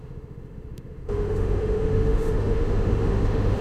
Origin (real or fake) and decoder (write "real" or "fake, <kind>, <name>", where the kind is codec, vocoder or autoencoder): fake, autoencoder, DAC-VAE